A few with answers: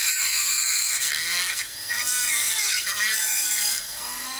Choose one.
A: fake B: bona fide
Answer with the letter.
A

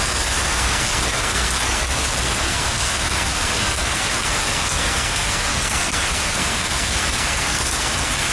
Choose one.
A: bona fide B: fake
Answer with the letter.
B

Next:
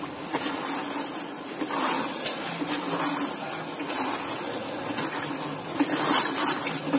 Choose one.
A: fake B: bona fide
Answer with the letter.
B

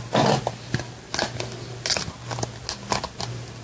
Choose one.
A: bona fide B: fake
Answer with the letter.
A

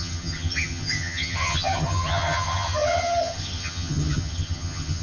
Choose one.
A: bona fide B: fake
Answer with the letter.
B